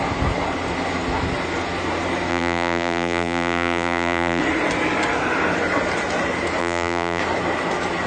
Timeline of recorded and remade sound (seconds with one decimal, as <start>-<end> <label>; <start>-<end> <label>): 0.0-2.3 recorded; 2.3-4.4 remade; 4.4-6.6 recorded; 6.6-7.2 remade; 7.2-8.1 recorded